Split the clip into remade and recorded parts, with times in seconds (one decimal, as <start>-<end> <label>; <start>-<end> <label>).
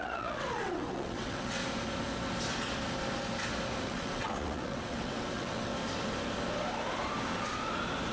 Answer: 0.0-1.6 remade; 1.6-3.8 recorded; 3.8-5.7 remade; 5.7-8.1 recorded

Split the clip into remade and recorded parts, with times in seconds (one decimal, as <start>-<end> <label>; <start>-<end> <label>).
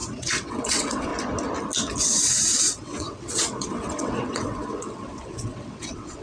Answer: 0.0-1.1 remade; 1.1-2.0 recorded; 2.0-6.2 remade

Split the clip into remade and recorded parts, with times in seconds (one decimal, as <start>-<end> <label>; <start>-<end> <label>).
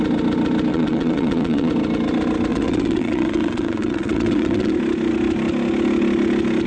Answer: 0.0-0.7 recorded; 0.7-1.7 remade; 1.7-2.5 recorded; 2.5-4.7 remade; 4.7-6.7 recorded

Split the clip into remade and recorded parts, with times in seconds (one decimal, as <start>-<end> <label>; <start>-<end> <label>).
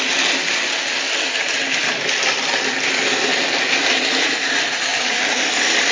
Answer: 0.0-5.9 recorded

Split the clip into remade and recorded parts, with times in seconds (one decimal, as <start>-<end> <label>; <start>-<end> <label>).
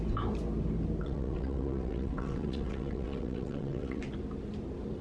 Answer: 0.0-1.0 recorded; 1.0-4.0 remade; 4.0-5.0 recorded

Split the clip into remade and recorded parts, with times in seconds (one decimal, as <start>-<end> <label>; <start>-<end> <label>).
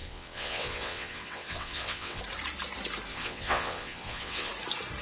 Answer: 0.0-2.2 remade; 2.2-3.1 recorded; 3.1-4.5 remade; 4.5-5.0 recorded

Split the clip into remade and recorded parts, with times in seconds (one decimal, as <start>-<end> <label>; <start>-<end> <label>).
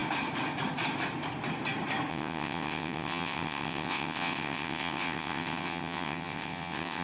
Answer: 0.0-2.1 recorded; 2.1-7.0 remade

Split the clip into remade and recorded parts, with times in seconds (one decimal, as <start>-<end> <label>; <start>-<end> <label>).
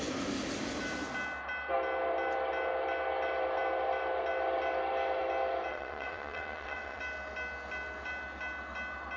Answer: 0.0-5.7 recorded; 5.7-7.0 remade; 7.0-9.2 recorded